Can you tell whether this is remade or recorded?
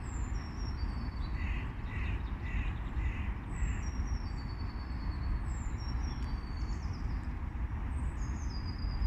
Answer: recorded